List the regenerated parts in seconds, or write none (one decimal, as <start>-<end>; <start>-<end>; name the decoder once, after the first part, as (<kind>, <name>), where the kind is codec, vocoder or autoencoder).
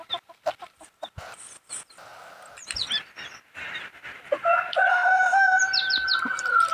4.9-5.6 (autoencoder, DAC-VAE)